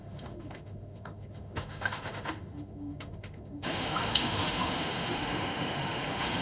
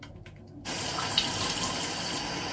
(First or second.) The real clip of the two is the second